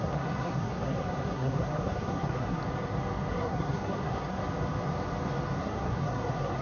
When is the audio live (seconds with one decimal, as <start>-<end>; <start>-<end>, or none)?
2.6-3.3; 4.4-5.6